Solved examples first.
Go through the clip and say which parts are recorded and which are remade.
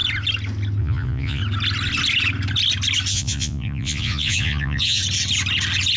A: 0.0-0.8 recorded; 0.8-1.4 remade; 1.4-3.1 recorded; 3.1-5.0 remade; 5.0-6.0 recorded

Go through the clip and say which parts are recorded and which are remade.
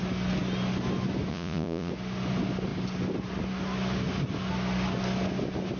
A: 0.0-1.3 recorded; 1.3-1.9 remade; 1.9-5.8 recorded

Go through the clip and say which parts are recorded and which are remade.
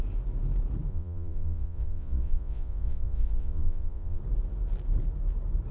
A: 0.0-0.9 recorded; 0.9-4.2 remade; 4.2-5.7 recorded